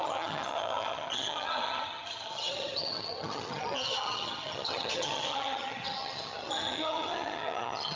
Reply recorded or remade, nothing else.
remade